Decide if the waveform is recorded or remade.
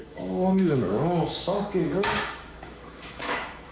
remade